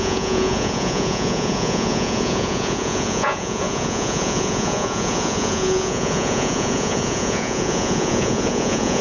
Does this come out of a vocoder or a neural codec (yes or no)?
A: yes